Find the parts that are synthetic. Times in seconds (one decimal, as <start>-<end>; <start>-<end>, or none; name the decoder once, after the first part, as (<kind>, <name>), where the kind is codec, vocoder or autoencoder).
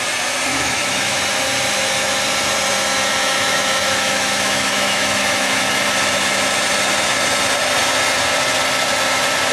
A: 0.5-1.2 (autoencoder, DAC-VAE); 3.2-5.6